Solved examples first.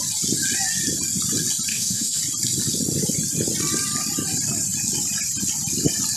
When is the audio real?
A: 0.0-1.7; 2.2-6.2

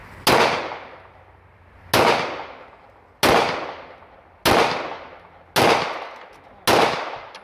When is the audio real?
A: 0.0-7.4

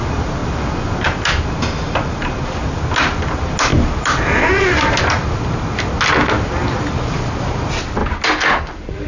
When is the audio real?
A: 0.0-9.1

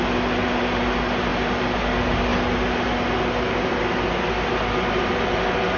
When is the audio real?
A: 0.0-5.8